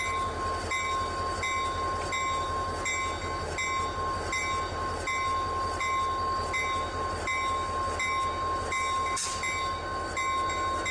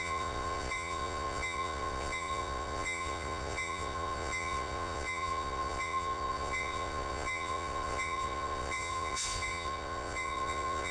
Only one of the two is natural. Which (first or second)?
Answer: first